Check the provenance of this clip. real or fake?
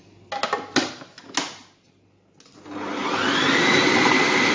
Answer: real